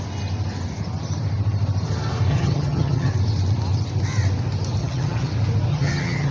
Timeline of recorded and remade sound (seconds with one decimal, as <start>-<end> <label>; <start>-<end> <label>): 0.0-2.3 recorded; 2.3-3.1 remade; 3.1-4.8 recorded; 4.8-5.3 remade; 5.3-5.7 recorded; 5.7-6.3 remade

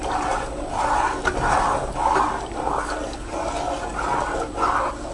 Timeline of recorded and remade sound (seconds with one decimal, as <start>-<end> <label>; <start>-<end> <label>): 0.0-5.1 recorded

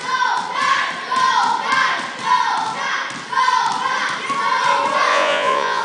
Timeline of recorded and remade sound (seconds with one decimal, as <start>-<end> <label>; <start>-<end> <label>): 0.0-5.1 recorded; 5.1-5.8 remade

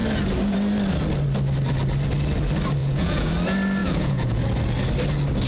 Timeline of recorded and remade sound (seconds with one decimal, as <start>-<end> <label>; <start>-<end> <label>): 0.0-2.8 recorded; 2.8-3.3 remade; 3.3-3.8 recorded; 3.8-4.4 remade; 4.4-5.5 recorded

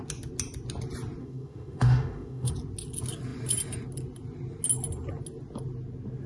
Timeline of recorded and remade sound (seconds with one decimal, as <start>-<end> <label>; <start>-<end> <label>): 0.0-1.2 recorded; 1.2-2.5 remade; 2.5-6.3 recorded

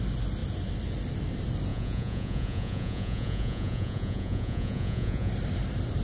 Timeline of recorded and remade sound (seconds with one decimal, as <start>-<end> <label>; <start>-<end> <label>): 0.0-1.7 recorded; 1.7-5.3 remade; 5.3-6.0 recorded